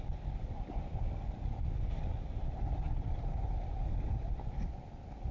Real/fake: real